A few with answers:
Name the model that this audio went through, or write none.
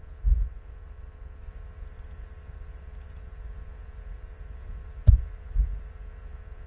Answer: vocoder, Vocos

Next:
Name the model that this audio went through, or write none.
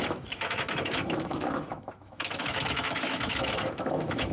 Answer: autoencoder, DAC-VAE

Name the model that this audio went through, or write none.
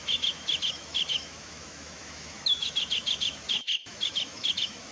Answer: autoencoder, DAC-VAE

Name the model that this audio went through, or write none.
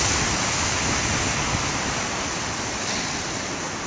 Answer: none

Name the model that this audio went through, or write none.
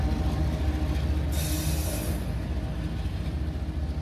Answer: none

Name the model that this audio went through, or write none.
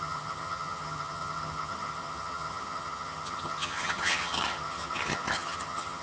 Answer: vocoder, HiFi-GAN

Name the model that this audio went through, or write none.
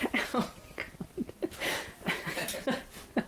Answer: vocoder, BigVGAN v2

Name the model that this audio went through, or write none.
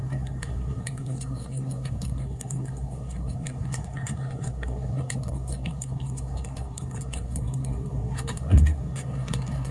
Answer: codec, SNAC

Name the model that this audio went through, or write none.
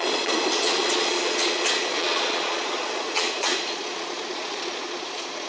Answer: vocoder, Vocos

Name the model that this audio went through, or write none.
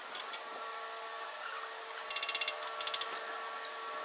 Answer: none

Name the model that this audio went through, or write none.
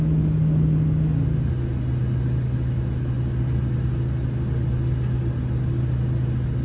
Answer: none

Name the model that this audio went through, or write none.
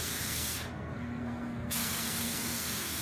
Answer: codec, SNAC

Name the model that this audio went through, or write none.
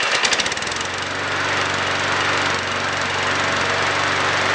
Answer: none